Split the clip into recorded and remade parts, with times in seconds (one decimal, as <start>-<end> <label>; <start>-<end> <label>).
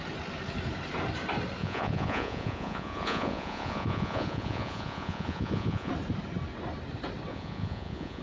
0.0-1.6 recorded; 1.6-5.9 remade; 5.9-7.3 recorded; 7.3-8.2 remade